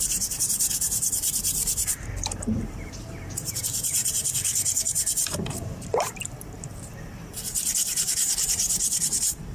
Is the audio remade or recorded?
remade